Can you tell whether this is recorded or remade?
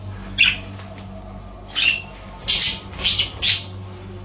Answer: recorded